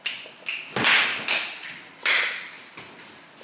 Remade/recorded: recorded